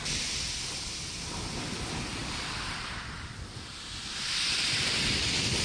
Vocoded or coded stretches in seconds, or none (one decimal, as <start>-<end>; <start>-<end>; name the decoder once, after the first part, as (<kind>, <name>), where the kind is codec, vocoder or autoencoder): 2.2-4.0 (vocoder, BigVGAN v2)